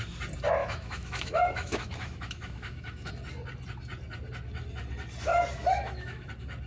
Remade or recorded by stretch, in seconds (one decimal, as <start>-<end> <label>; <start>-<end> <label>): 0.0-0.6 recorded; 0.6-3.1 remade; 3.1-5.3 recorded; 5.3-6.3 remade; 6.3-6.7 recorded